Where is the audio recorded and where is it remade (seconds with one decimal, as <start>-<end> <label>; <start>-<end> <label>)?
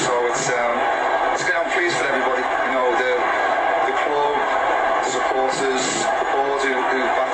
0.0-7.3 recorded